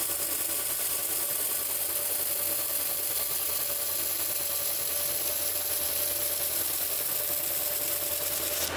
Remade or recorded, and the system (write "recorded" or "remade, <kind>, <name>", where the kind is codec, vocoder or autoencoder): recorded